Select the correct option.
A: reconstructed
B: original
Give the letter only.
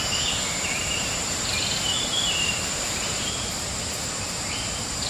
A